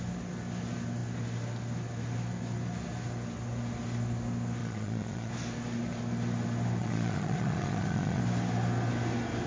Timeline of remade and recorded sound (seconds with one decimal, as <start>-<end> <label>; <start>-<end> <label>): 0.0-4.6 recorded; 4.6-5.3 remade; 5.3-6.8 recorded; 6.8-8.2 remade; 8.2-9.5 recorded